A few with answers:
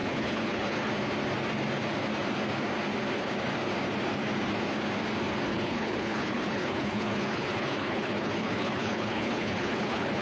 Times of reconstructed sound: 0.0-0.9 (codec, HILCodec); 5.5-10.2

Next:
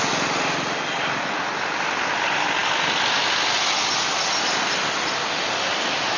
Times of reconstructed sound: none

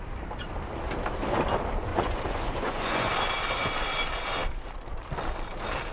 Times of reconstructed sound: 1.9-3.1 (vocoder, Vocos)